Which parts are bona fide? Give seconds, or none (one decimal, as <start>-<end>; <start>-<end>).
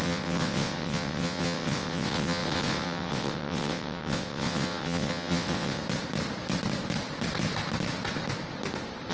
5.8-9.1